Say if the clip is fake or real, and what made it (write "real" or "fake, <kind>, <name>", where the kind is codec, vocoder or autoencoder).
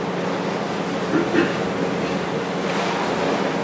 real